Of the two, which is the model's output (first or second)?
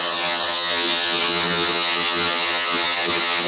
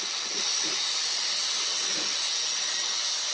first